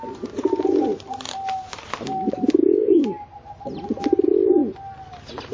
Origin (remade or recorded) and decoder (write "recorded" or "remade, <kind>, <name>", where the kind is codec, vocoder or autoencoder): recorded